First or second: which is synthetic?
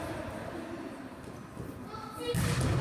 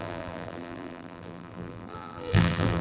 second